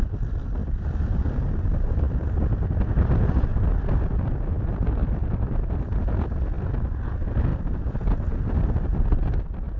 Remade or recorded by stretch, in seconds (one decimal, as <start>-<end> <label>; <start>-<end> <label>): 0.0-0.6 recorded; 0.6-3.1 remade; 3.1-3.5 recorded; 3.5-6.4 remade; 6.4-7.5 recorded; 7.5-8.3 remade; 8.3-9.8 recorded